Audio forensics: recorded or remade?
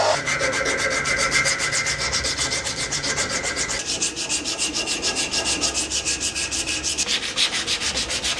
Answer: recorded